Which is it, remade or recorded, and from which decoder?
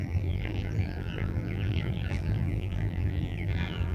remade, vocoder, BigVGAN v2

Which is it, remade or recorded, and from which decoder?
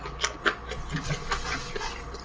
recorded